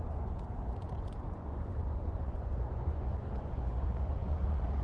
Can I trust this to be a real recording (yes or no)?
no